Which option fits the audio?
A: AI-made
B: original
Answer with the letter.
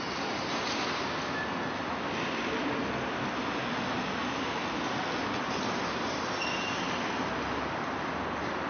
B